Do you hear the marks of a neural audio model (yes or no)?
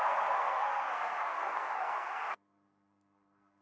yes